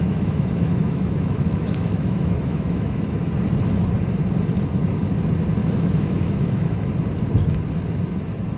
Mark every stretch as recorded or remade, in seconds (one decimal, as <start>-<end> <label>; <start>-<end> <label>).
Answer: 0.0-3.3 remade; 3.3-5.6 recorded; 5.6-6.9 remade; 6.9-8.6 recorded